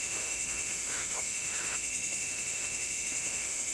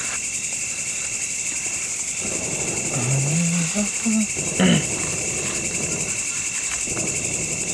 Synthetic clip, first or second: first